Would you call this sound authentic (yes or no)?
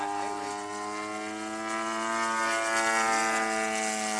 yes